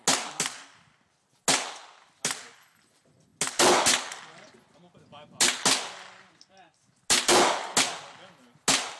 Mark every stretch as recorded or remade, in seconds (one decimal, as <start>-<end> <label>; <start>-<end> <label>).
0.0-9.0 recorded